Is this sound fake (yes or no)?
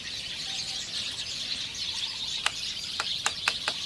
yes